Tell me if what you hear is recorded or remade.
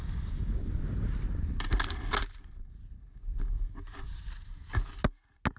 recorded